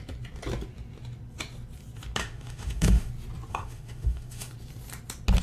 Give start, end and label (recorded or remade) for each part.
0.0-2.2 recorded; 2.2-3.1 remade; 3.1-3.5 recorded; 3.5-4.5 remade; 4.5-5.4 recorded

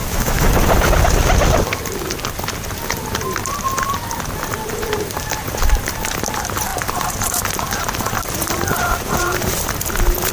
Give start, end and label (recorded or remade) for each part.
0.0-0.5 remade; 0.5-10.3 recorded